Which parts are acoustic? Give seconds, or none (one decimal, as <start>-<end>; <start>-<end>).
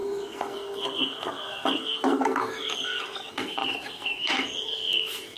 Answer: none